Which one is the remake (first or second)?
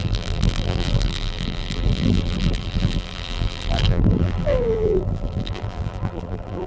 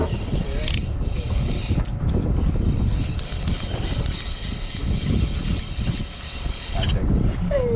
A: first